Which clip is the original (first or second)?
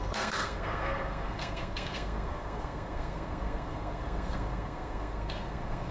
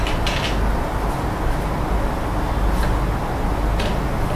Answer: second